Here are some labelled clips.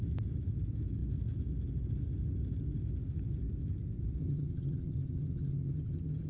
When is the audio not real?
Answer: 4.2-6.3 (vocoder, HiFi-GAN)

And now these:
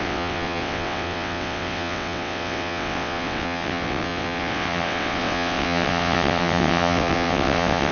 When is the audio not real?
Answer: 0.0-7.9 (vocoder, WaveNeXt)

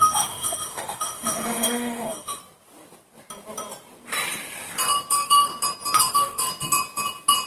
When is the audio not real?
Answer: 0.0-2.4 (autoencoder, DAC-VAE); 5.1-5.5; 6.0-6.5

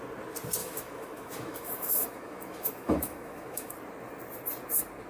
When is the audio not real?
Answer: 0.6-3.7 (autoencoder, DAC-VAE)

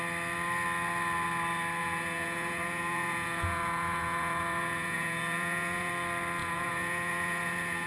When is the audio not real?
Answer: 1.8-5.9 (vocoder, Vocos); 6.4-7.9